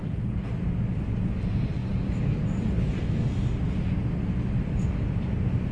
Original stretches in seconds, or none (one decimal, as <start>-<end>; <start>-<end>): 0.5-5.7